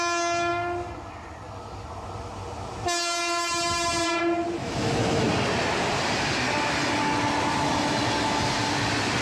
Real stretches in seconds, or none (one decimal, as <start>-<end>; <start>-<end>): 0.0-4.6; 5.3-9.2